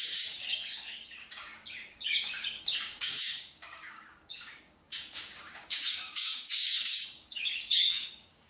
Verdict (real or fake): fake